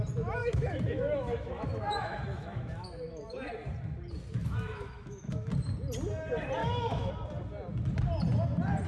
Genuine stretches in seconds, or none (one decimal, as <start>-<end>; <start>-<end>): 0.0-0.4; 3.5-4.4; 5.5-6.6; 7.1-8.9